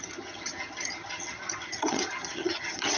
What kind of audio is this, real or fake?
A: fake